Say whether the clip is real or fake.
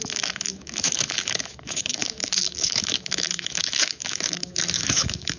fake